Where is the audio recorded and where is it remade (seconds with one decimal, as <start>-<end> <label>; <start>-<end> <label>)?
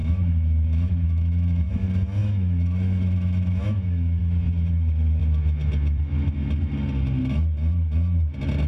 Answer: 0.0-1.7 remade; 1.7-2.2 recorded; 2.2-4.2 remade; 4.2-8.7 recorded